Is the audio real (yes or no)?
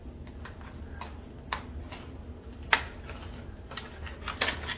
yes